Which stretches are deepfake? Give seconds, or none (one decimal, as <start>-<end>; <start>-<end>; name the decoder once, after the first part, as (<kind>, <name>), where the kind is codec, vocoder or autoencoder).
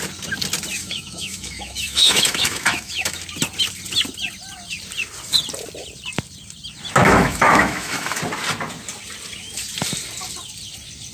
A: 0.8-3.2 (autoencoder, DAC-VAE); 7.0-8.2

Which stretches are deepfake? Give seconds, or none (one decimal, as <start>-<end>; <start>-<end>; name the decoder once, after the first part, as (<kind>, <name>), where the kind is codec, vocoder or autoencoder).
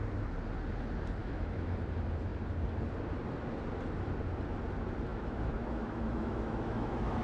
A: 1.2-1.8 (autoencoder, DAC-VAE); 5.1-7.2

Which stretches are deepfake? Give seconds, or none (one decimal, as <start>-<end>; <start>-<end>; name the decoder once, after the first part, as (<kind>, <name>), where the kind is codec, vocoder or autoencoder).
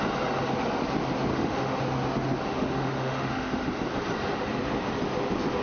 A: 1.3-1.8 (autoencoder, DAC-VAE); 2.5-3.7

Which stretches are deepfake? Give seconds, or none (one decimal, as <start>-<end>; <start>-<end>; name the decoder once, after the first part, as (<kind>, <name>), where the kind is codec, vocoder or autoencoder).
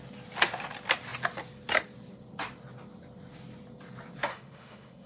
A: 4.3-5.1 (autoencoder, DAC-VAE)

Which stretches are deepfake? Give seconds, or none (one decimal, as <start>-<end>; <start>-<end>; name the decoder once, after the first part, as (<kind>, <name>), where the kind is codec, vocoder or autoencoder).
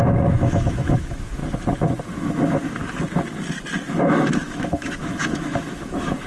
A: 0.0-1.4 (autoencoder, DAC-VAE); 2.0-2.8; 3.9-6.3